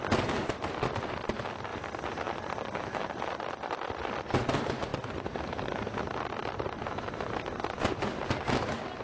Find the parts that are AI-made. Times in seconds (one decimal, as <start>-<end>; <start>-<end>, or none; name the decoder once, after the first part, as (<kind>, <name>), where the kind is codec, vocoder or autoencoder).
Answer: none